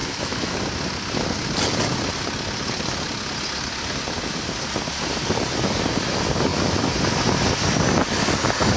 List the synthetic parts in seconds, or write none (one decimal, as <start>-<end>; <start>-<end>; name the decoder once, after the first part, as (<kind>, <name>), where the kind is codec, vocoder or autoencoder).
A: 0.0-0.6 (autoencoder, DAC-VAE)